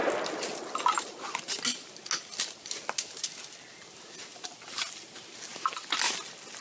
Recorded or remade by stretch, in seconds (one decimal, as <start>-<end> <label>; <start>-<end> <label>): 0.0-6.6 recorded